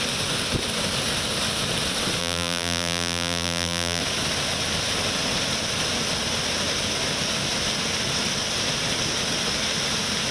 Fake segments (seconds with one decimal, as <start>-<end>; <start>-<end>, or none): 2.2-4.0